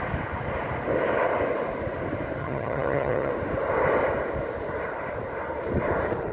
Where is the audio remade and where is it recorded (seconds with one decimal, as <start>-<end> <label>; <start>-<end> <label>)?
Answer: 0.0-2.4 recorded; 2.4-3.3 remade; 3.3-6.3 recorded

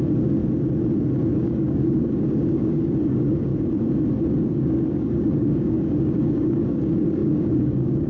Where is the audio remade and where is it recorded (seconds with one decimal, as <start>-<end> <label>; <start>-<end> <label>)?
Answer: 0.0-0.4 remade; 0.4-1.4 recorded; 1.4-3.5 remade; 3.5-4.5 recorded; 4.5-8.1 remade

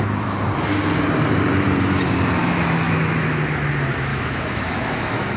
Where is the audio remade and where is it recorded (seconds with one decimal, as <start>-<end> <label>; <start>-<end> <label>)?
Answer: 0.0-2.4 recorded; 2.4-3.4 remade; 3.4-4.1 recorded; 4.1-5.4 remade